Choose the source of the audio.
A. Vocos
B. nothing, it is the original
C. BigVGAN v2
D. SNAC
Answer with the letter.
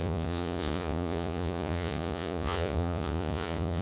A